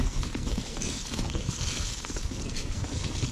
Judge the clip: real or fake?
fake